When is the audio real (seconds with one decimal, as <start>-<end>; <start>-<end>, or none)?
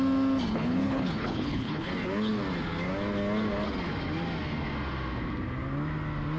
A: 0.0-0.5; 1.9-6.4